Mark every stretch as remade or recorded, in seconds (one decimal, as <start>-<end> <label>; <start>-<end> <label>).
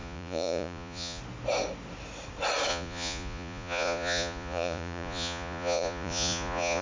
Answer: 0.0-1.2 remade; 1.2-2.7 recorded; 2.7-6.8 remade